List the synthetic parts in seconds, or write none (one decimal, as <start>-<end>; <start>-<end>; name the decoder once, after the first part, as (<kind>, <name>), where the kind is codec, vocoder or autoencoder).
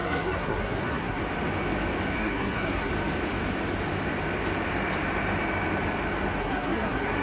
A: 0.0-1.2 (codec, SNAC); 2.1-2.9; 6.4-7.2